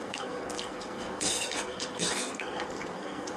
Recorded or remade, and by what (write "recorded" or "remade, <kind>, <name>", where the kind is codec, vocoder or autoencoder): remade, codec, SNAC